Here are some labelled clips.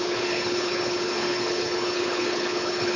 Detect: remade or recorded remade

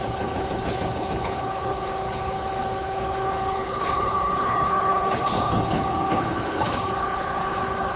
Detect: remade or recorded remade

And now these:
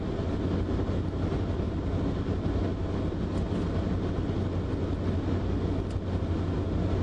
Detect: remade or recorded recorded